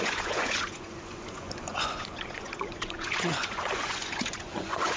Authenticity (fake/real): fake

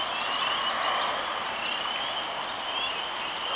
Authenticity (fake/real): real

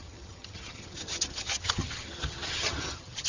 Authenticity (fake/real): fake